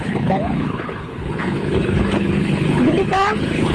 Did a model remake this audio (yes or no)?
yes